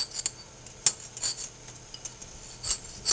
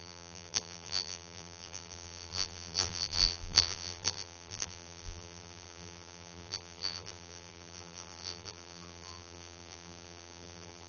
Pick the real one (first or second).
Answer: first